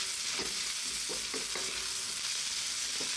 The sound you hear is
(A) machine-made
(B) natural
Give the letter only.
B